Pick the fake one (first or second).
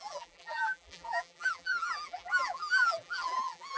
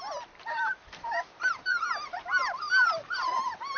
first